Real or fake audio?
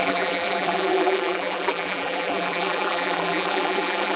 fake